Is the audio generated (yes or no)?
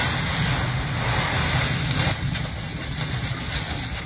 no